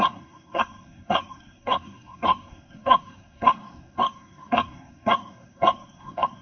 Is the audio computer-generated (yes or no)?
yes